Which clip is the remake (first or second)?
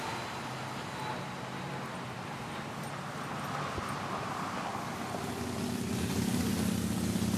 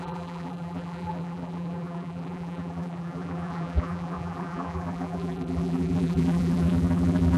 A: second